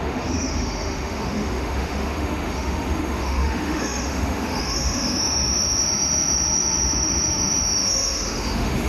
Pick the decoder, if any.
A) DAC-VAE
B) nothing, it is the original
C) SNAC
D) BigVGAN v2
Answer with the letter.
A